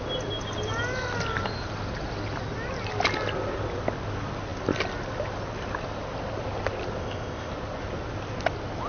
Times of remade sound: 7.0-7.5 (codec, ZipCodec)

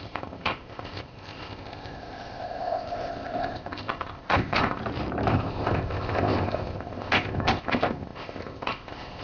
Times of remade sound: 0.0-4.8 (codec, ZipCodec); 5.3-9.2

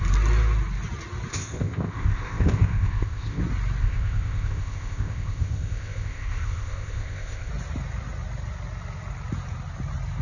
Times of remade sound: 1.3-3.4 (codec, ZipCodec); 3.8-7.5

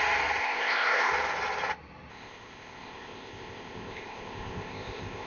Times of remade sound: 0.4-1.1 (codec, ZipCodec); 2.1-5.3

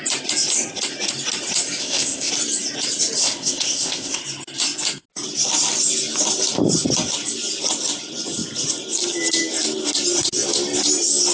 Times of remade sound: 1.8-2.3 (codec, ZipCodec); 3.2-4.2

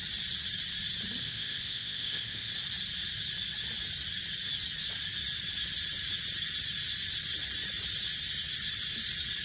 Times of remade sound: 1.2-2.5 (codec, ZipCodec)

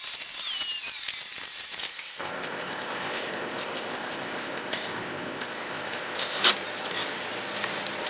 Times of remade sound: 1.8-6.4 (codec, ZipCodec)